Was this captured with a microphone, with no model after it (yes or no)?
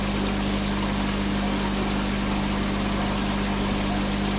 yes